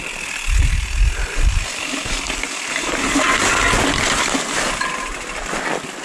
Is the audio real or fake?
real